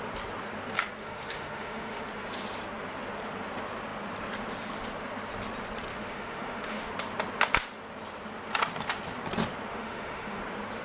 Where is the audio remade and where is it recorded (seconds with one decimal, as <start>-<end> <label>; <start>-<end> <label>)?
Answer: 0.0-1.0 recorded; 1.0-2.1 remade; 2.1-5.9 recorded; 5.9-6.9 remade; 6.9-9.7 recorded; 9.7-10.4 remade; 10.4-10.8 recorded